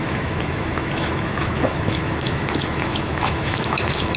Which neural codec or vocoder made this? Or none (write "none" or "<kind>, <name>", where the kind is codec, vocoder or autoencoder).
autoencoder, DAC-VAE